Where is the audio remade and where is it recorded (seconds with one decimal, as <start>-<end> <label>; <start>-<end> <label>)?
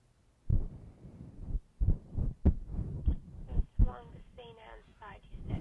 0.0-0.5 recorded; 0.5-1.3 remade; 1.3-2.7 recorded; 2.7-3.4 remade; 3.4-4.9 recorded; 4.9-5.6 remade